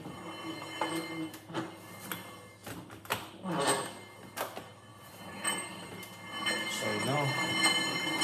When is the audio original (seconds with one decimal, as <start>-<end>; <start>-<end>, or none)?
0.0-4.9; 6.1-8.2